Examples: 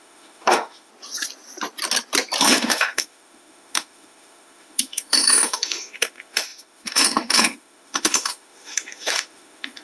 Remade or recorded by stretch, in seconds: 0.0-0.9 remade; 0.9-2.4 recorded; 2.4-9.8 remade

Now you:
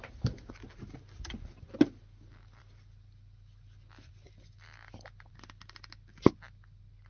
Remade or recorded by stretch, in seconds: 0.0-7.1 recorded

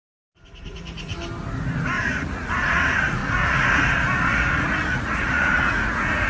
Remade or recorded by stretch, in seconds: 0.0-1.1 remade; 1.1-2.0 recorded; 2.0-6.3 remade